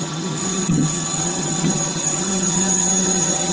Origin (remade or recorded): remade